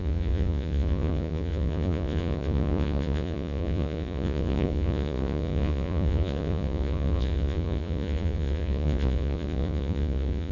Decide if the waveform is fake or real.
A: fake